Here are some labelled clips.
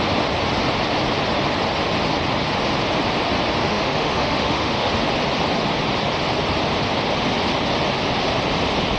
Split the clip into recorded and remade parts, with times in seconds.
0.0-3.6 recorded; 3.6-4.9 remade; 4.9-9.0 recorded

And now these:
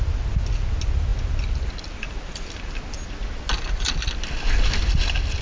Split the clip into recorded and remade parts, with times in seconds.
0.0-5.4 recorded

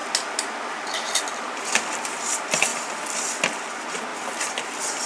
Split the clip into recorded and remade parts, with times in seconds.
0.0-5.1 recorded

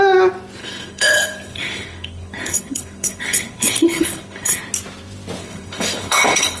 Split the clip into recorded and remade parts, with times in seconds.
0.0-0.6 recorded; 0.6-4.6 remade; 4.6-5.4 recorded; 5.4-6.6 remade

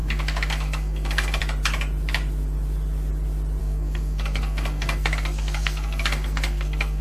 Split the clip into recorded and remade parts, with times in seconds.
0.0-1.4 remade; 1.4-3.6 recorded; 3.6-7.0 remade

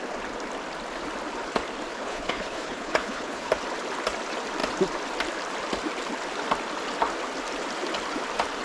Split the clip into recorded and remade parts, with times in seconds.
0.0-1.9 recorded; 1.9-3.5 remade; 3.5-8.6 recorded

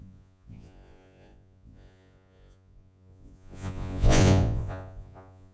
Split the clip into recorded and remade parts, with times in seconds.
0.0-5.5 remade